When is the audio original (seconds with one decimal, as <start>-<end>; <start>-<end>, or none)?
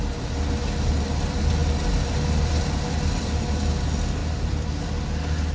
0.0-4.2; 4.8-5.5